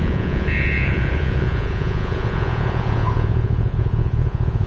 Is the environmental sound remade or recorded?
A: remade